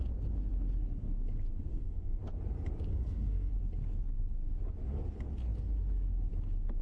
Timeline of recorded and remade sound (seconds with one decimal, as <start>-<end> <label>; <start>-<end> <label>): 0.0-1.7 recorded; 1.7-2.2 remade; 2.2-2.9 recorded; 2.9-3.5 remade; 3.5-6.8 recorded